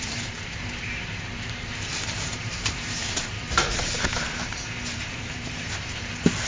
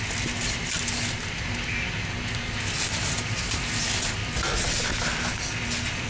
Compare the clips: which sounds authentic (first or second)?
second